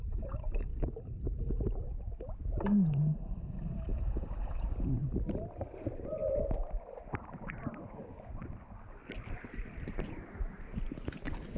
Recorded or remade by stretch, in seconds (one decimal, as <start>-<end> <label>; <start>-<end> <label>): 0.0-0.7 remade; 0.7-2.0 recorded; 2.0-6.2 remade; 6.2-9.9 recorded; 9.9-11.6 remade

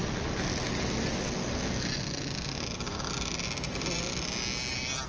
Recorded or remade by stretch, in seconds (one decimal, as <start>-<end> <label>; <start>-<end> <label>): 0.0-5.1 recorded

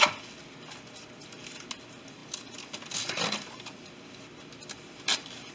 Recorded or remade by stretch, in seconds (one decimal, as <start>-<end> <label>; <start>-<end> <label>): 0.0-5.5 recorded